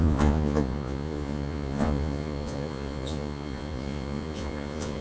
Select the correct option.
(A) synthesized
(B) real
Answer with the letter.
A